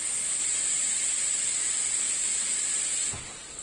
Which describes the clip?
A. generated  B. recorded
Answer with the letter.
B